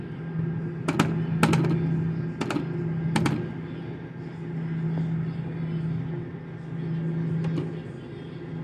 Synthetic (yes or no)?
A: no